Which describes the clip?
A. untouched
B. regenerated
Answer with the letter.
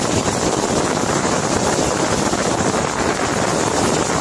A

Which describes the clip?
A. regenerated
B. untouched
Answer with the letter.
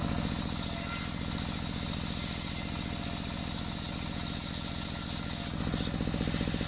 B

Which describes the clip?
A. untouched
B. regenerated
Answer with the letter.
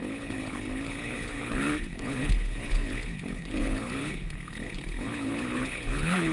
B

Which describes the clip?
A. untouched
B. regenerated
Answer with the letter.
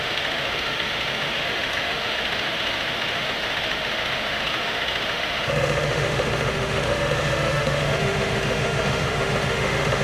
B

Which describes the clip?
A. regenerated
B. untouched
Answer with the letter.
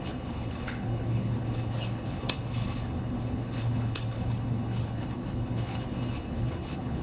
A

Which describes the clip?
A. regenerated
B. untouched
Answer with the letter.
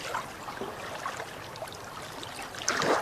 B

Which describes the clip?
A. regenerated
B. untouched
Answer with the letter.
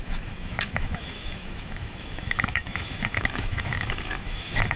A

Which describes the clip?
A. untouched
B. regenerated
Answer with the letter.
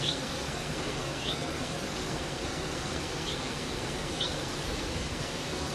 B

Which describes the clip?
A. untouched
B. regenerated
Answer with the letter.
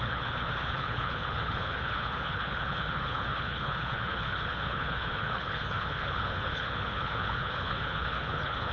B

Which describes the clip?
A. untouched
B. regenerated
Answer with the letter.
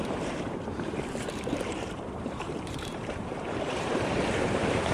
B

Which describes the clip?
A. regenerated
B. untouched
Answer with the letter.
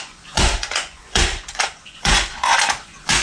A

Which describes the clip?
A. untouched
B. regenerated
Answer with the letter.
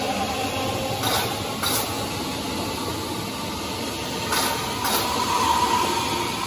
A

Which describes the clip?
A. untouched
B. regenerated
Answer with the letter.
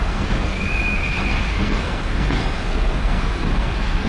B